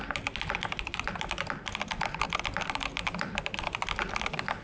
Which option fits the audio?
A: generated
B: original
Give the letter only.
B